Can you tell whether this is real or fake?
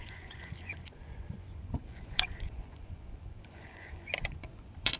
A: fake